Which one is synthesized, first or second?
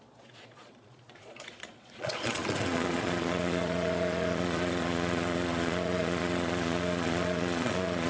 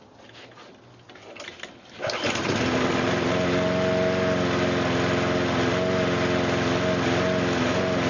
first